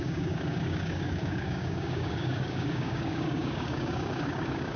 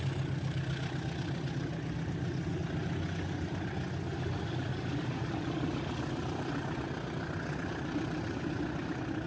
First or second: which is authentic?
second